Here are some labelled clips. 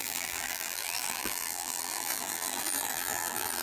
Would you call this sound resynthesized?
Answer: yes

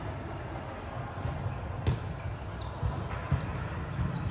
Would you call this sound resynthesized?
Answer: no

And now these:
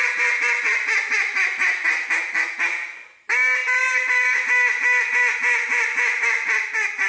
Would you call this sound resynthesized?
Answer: no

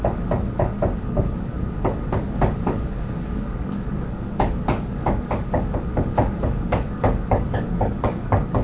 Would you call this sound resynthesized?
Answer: yes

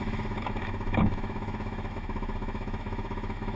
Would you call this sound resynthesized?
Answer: yes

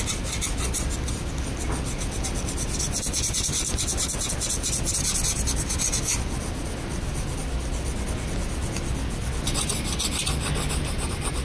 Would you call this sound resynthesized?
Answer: no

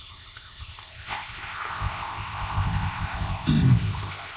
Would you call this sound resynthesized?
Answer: yes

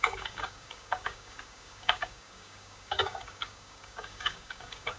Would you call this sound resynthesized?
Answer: yes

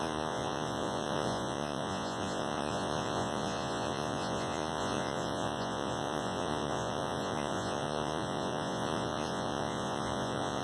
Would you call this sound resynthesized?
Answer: yes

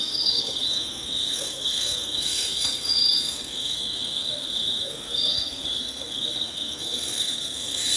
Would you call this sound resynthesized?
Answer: yes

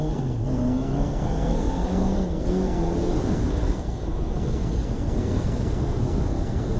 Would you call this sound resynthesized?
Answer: yes